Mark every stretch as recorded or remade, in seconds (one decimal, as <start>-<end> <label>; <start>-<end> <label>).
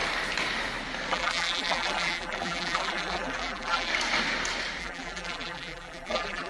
0.0-1.1 recorded; 1.1-3.9 remade; 3.9-4.8 recorded; 4.8-6.5 remade